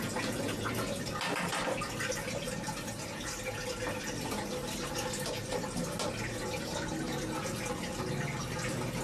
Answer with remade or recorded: recorded